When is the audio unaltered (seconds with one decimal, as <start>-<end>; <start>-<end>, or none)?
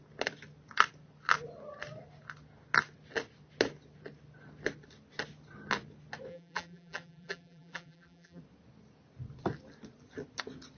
0.0-6.3; 8.4-10.8